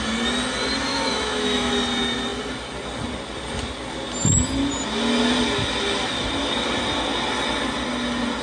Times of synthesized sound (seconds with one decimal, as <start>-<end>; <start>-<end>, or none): 0.9-1.7